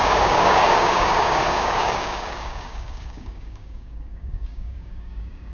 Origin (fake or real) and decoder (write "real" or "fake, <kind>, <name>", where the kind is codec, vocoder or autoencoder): fake, codec, DAC